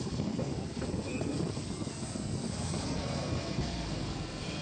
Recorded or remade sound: remade